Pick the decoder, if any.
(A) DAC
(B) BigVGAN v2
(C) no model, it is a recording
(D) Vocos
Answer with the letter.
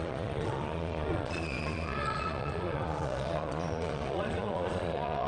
D